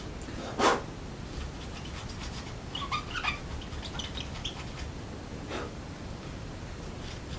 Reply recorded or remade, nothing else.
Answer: recorded